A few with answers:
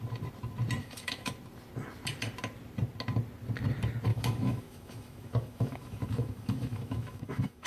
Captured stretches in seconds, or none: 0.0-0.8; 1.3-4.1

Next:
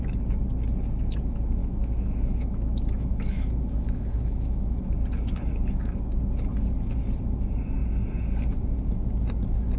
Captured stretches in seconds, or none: 0.0-1.6; 4.8-9.8

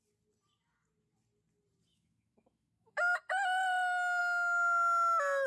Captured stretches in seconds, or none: 0.0-1.9; 3.2-5.5

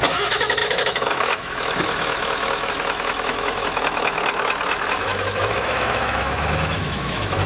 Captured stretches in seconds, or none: none